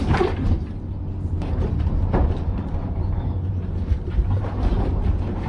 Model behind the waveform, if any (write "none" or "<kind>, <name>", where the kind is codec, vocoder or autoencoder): vocoder, BigVGAN v2